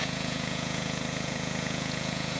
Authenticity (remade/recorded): remade